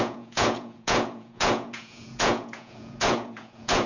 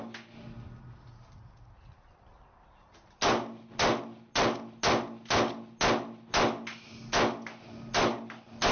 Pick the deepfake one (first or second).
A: first